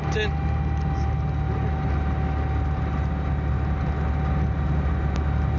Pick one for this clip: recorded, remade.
recorded